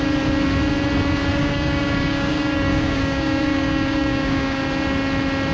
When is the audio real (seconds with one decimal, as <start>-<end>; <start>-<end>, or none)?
0.0-1.3; 4.6-5.5